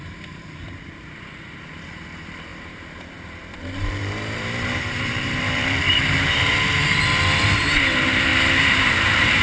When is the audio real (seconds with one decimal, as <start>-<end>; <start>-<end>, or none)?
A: 6.5-7.4